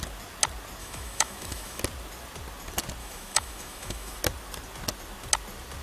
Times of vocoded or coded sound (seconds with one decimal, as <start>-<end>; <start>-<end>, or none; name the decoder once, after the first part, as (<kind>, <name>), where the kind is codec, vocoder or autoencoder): 0.8-1.8 (autoencoder, DAC-VAE); 3.0-4.2